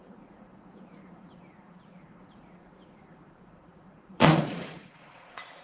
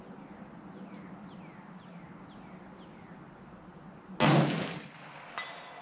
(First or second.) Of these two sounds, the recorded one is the second